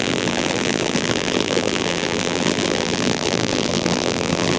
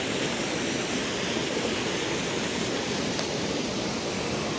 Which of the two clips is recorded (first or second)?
second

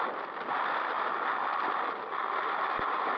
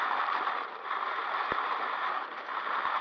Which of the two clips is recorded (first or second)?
first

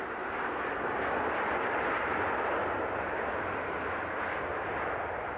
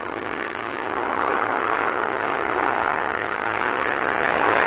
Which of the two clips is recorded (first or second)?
first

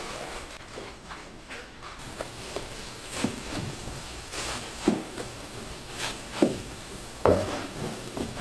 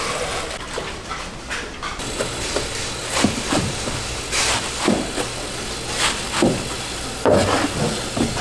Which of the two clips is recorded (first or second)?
second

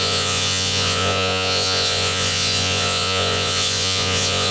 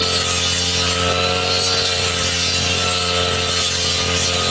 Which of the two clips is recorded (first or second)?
second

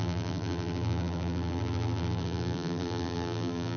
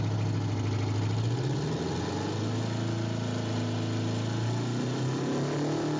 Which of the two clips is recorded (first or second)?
second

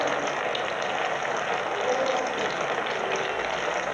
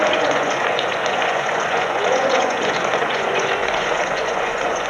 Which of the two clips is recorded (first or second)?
first